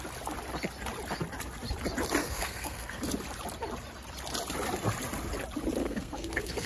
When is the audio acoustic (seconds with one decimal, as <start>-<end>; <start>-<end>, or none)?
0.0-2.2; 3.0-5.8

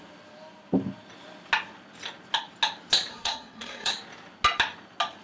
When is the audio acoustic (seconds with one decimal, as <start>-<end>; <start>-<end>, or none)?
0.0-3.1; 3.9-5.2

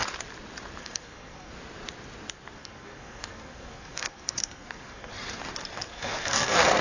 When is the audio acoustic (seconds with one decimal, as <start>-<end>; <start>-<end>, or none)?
0.0-0.8; 1.5-2.6; 5.1-5.9

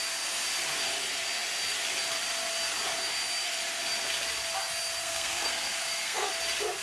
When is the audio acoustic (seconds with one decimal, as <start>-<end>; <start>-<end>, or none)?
0.0-5.0; 6.3-6.8